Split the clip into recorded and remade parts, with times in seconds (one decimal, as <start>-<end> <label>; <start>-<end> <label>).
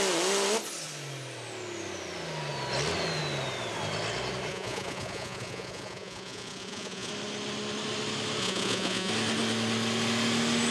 0.0-4.5 recorded; 4.5-7.1 remade; 7.1-8.4 recorded; 8.4-9.1 remade; 9.1-10.7 recorded